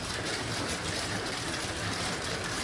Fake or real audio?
fake